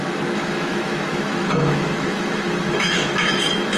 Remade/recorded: remade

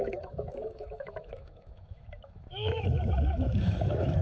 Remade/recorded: remade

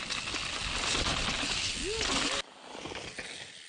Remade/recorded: recorded